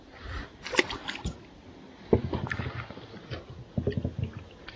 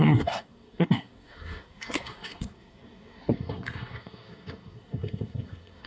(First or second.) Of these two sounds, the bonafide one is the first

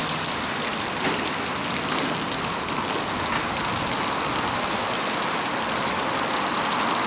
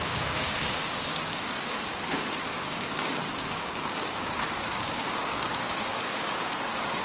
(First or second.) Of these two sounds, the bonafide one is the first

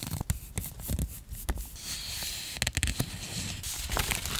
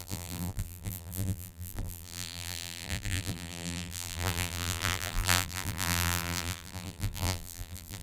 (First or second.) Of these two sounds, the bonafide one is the first